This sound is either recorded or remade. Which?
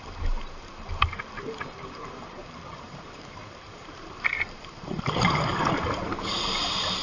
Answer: remade